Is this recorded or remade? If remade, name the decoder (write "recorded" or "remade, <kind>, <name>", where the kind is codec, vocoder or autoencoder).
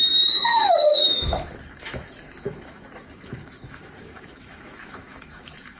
remade, autoencoder, DAC-VAE